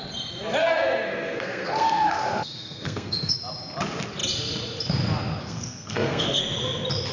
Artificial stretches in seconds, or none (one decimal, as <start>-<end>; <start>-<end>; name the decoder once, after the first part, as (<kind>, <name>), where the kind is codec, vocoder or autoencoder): 0.6-3.3 (codec, SNAC); 5.4-6.4